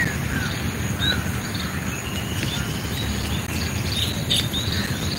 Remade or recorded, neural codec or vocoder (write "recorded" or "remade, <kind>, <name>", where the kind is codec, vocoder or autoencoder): recorded